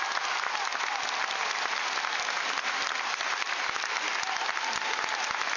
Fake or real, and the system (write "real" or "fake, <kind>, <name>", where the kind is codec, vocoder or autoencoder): real